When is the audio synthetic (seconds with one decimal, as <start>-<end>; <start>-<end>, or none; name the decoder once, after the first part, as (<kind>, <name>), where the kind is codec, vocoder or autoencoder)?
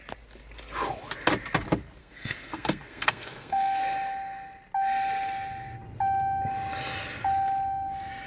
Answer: 2.0-3.8 (codec, SNAC)